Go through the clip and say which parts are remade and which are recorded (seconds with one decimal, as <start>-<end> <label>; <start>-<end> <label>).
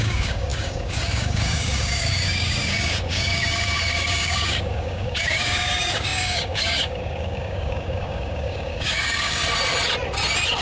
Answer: 0.0-9.4 remade; 9.4-10.6 recorded